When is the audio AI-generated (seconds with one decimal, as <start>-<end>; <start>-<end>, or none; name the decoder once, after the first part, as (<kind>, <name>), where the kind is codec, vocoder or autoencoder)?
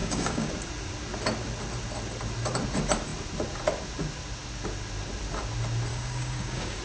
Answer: 0.0-0.5 (codec, DAC); 5.9-6.8